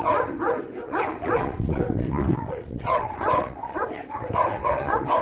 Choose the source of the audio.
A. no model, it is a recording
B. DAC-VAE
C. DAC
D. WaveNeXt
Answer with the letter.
D